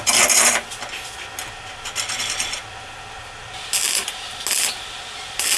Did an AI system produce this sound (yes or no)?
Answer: no